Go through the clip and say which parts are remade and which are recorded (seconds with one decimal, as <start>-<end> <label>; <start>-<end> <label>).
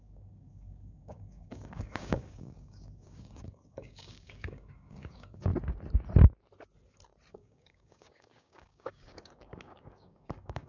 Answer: 0.0-5.5 remade; 5.5-7.3 recorded; 7.3-10.7 remade